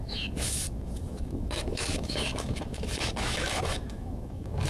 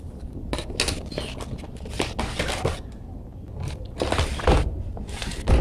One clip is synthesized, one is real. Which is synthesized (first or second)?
first